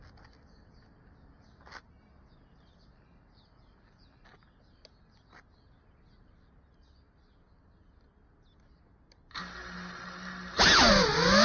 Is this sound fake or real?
real